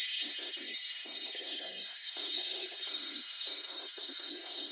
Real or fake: fake